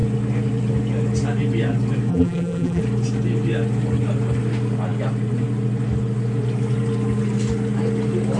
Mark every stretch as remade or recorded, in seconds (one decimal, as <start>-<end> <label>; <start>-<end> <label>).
0.0-2.1 recorded; 2.1-2.8 remade; 2.8-8.4 recorded